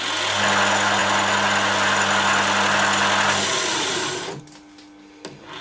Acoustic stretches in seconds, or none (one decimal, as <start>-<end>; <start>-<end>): 0.0-5.6